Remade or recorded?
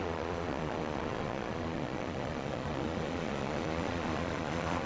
remade